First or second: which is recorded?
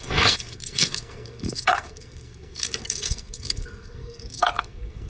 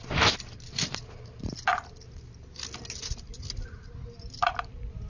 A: second